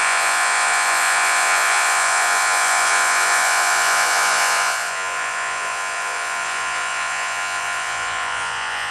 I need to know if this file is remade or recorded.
remade